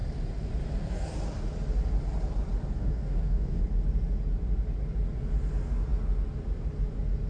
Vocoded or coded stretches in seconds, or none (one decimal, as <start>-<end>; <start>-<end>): 2.8-3.6